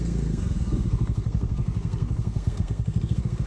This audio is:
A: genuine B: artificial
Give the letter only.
B